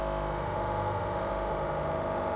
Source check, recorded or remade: remade